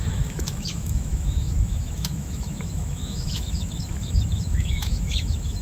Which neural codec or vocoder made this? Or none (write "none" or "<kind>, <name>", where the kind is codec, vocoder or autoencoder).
autoencoder, DAC-VAE